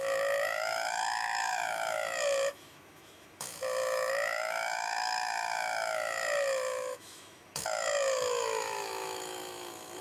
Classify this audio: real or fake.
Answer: fake